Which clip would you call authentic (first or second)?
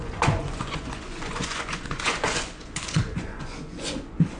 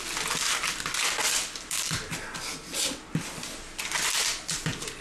second